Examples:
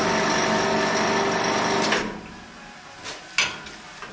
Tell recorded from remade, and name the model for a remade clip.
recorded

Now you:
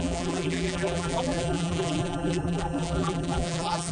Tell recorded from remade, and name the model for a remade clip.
remade, vocoder, BigVGAN v2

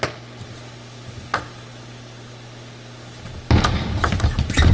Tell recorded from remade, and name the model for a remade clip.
recorded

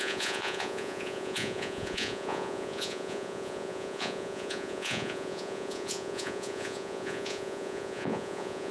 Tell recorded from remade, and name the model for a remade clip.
remade, vocoder, Vocos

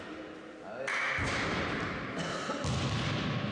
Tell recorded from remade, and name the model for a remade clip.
recorded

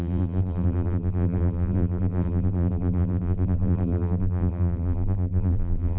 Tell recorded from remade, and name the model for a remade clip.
remade, vocoder, BigVGAN v2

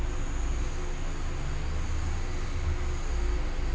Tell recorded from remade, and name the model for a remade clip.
recorded